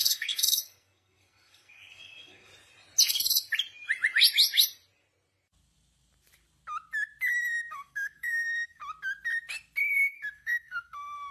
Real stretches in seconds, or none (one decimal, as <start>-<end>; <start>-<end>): 2.5-7.7; 8.8-9.8